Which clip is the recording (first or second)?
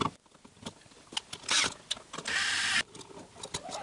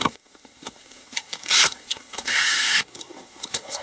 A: first